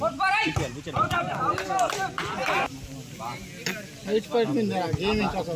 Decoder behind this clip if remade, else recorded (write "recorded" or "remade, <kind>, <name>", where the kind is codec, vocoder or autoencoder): recorded